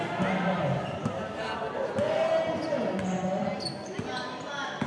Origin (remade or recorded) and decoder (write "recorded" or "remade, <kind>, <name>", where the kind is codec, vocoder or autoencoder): recorded